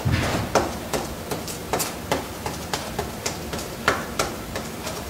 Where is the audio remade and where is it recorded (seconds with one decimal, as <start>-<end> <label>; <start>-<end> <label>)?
0.0-1.6 recorded; 1.6-5.1 remade